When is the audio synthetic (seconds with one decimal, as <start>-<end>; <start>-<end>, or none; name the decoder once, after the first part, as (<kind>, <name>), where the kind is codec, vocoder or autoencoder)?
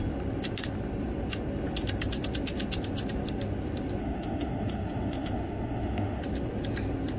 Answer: 4.0-6.2 (autoencoder, DAC-VAE)